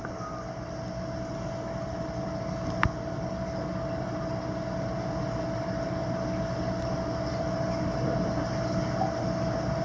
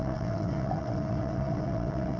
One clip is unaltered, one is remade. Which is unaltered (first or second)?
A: first